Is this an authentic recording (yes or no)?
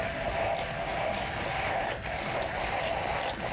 yes